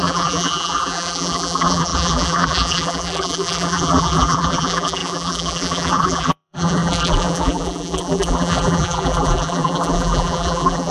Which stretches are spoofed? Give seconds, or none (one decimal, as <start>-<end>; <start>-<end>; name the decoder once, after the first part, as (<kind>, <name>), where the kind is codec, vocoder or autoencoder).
0.0-10.9 (vocoder, BigVGAN v2)